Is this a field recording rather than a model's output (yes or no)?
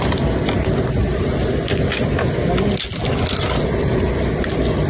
yes